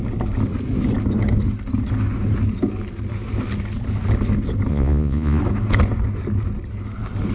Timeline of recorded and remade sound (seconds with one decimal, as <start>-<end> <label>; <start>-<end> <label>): 0.0-4.7 recorded; 4.7-5.4 remade; 5.4-7.3 recorded